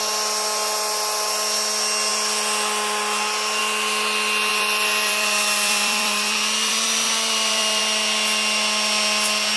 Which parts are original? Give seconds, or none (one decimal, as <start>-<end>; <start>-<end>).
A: 0.0-4.5; 7.8-9.6